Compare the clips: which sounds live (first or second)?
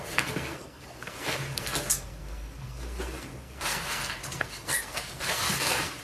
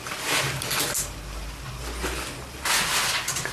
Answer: second